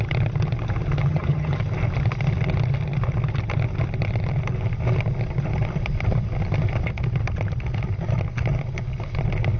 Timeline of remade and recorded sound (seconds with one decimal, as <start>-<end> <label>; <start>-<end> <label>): 0.0-1.0 recorded; 1.0-1.6 remade; 1.6-9.6 recorded